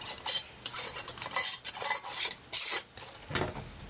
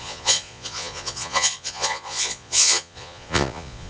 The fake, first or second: second